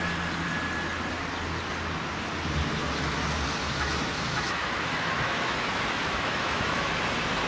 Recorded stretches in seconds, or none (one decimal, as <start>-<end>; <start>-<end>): 0.0-3.6; 6.9-7.5